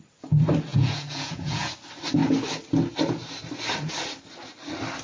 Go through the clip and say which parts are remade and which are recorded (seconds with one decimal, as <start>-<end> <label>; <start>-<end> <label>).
0.0-0.7 recorded; 0.7-1.7 remade; 1.7-5.0 recorded